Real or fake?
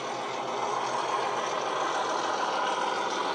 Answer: real